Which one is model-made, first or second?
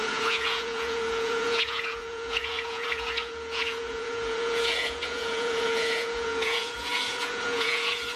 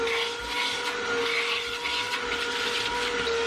first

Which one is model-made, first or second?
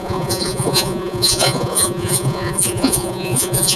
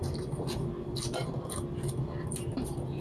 first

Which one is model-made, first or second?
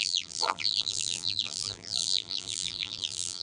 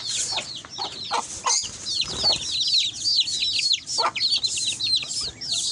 first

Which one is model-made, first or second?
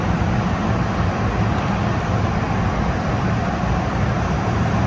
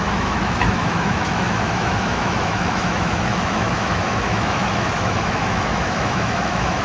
second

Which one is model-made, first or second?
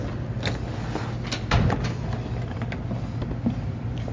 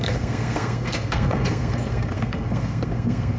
second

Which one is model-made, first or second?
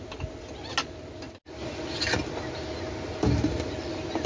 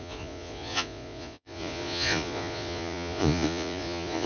second